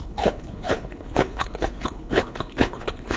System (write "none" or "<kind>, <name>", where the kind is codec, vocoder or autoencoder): codec, HILCodec